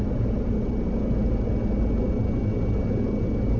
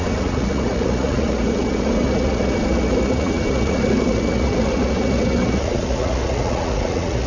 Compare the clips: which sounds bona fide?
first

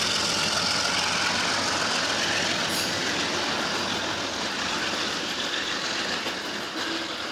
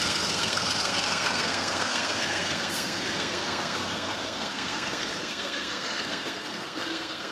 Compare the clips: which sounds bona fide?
first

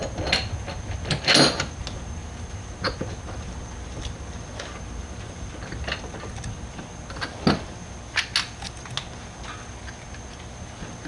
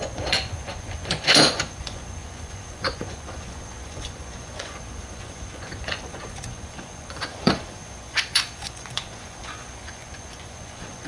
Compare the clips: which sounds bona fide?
first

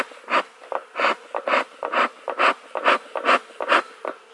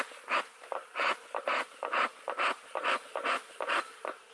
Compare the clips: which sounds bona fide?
first